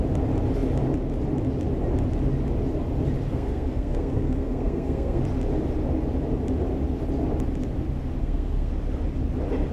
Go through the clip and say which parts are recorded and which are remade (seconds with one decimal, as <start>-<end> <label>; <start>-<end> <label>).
0.0-3.3 recorded; 3.3-5.2 remade; 5.2-8.2 recorded; 8.2-8.7 remade; 8.7-9.7 recorded